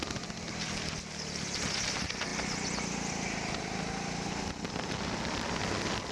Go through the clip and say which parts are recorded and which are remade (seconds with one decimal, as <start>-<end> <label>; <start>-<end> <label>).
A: 0.0-6.1 recorded